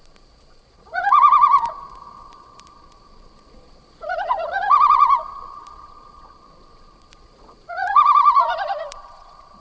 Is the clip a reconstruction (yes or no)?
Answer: yes